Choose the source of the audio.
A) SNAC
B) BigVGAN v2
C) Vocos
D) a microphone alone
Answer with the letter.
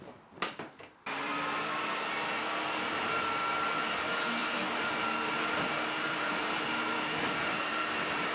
B